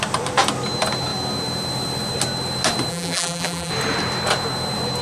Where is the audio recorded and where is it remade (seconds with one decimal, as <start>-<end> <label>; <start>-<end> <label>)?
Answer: 0.0-2.9 recorded; 2.9-3.7 remade; 3.7-5.0 recorded